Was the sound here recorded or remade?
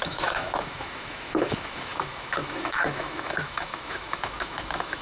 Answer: remade